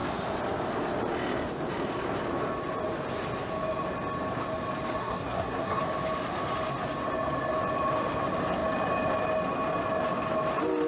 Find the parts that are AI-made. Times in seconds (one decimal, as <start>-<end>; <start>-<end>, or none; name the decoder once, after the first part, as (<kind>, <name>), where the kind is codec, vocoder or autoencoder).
5.0-5.8 (codec, SNAC)